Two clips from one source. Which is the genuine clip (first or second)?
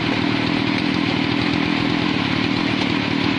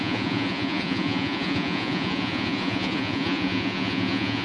first